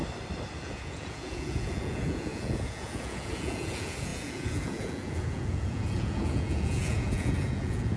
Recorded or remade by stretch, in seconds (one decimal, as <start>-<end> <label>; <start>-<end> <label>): 0.0-0.6 recorded; 0.6-8.0 remade